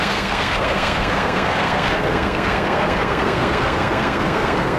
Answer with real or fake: fake